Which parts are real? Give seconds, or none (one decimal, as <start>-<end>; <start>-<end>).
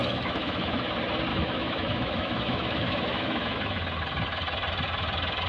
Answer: 0.9-1.3; 3.8-5.5